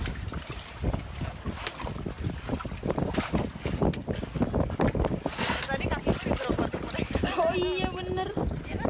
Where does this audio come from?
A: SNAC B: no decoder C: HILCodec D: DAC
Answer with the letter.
B